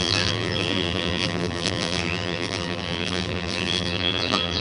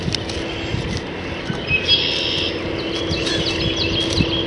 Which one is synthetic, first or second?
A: first